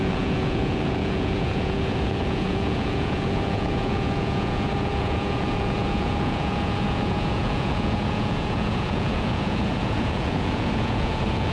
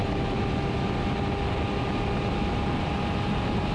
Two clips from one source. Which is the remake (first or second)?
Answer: first